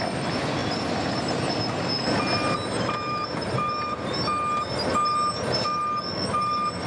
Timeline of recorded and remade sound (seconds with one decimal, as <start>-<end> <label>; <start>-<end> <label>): 0.0-6.9 recorded